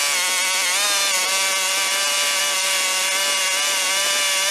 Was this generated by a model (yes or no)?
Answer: no